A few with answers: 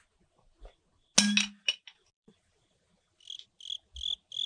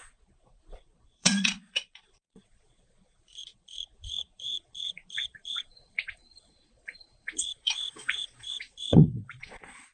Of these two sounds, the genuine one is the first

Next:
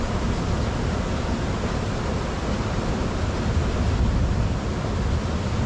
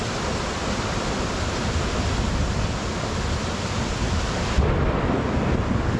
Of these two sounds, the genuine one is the first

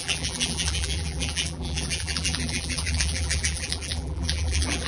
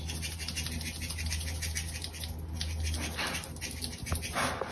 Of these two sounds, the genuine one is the second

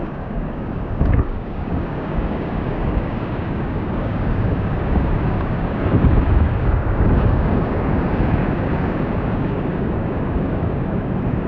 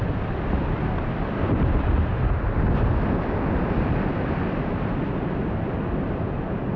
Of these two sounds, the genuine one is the second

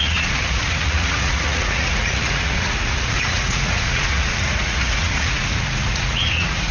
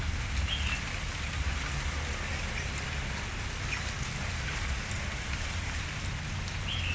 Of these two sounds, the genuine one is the second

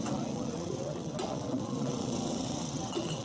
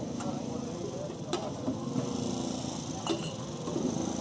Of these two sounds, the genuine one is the second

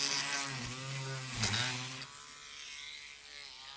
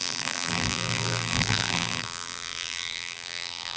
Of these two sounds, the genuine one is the first